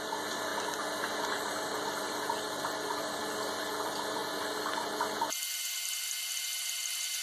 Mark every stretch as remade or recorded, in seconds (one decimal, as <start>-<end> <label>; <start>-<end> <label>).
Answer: 0.0-0.5 remade; 0.5-1.2 recorded; 1.2-3.2 remade; 3.2-3.7 recorded; 3.7-4.2 remade; 4.2-6.6 recorded; 6.6-7.2 remade